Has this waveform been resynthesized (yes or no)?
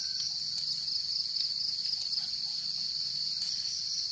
no